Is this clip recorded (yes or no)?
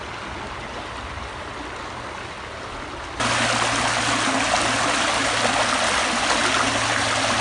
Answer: yes